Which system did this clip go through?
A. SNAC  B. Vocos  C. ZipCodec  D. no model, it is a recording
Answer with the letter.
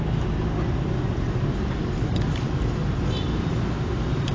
D